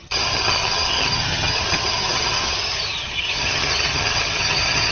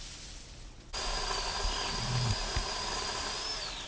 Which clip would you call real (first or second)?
second